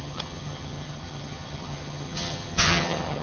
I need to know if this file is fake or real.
fake